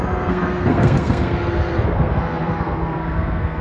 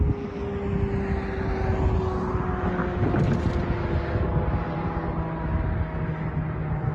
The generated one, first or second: first